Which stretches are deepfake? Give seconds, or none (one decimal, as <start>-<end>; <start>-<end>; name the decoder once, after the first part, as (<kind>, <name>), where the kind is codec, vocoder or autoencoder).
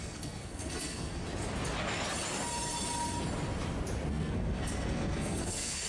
0.0-1.2 (codec, SNAC); 4.1-5.9